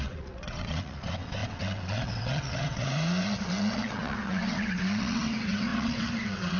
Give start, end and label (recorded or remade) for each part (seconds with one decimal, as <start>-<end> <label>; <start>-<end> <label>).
0.0-6.6 remade